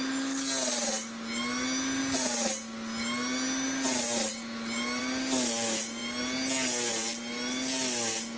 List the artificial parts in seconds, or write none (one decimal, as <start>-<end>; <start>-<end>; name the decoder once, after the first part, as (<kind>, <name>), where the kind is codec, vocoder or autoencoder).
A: none